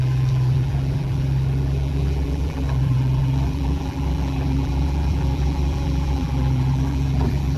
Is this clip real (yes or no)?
no